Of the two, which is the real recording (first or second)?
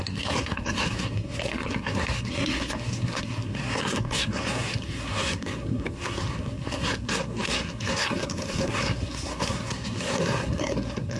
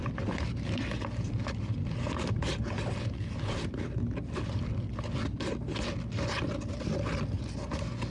second